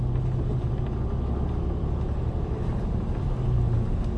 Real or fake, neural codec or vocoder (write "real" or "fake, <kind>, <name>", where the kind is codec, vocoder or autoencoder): real